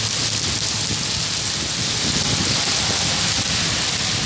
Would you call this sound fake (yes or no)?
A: no